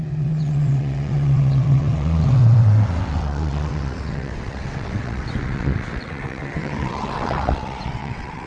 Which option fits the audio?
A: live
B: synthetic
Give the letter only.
B